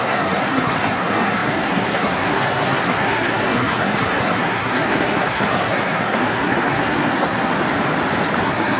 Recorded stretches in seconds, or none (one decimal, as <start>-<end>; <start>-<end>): 7.5-8.4